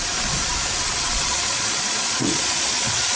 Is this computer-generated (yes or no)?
yes